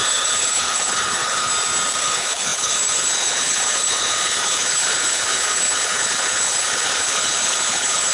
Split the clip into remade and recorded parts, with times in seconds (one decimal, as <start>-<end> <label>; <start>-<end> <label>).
0.0-1.5 remade; 1.5-2.0 recorded; 2.0-8.1 remade

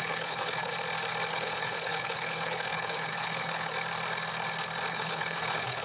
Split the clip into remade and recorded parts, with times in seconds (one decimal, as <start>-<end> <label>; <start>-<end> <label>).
0.0-0.7 remade; 0.7-1.3 recorded; 1.3-3.7 remade; 3.7-4.9 recorded; 4.9-5.8 remade

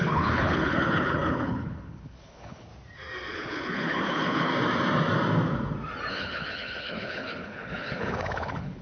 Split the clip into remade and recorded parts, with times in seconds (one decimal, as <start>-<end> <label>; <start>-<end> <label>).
0.0-2.7 remade; 2.7-3.3 recorded; 3.3-4.5 remade; 4.5-6.1 recorded; 6.1-8.8 remade

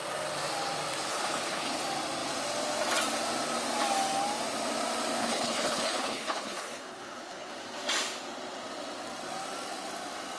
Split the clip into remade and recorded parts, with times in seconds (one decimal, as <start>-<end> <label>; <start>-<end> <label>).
0.0-1.1 recorded; 1.1-1.8 remade; 1.8-5.2 recorded; 5.2-7.5 remade; 7.5-10.4 recorded

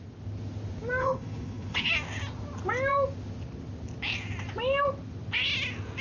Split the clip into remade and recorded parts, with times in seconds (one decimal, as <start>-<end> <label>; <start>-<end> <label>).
0.0-1.0 recorded; 1.0-1.9 remade; 1.9-6.0 recorded

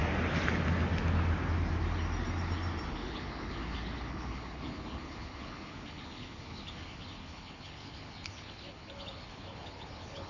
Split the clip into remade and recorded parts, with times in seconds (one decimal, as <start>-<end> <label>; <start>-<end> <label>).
0.0-2.9 recorded; 2.9-10.3 remade

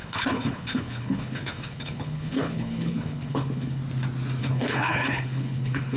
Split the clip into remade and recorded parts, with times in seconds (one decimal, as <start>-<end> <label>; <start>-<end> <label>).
0.0-3.8 remade; 3.8-4.4 recorded; 4.4-6.0 remade